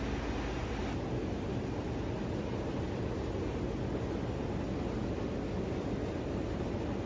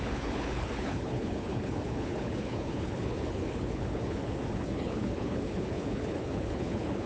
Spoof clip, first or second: second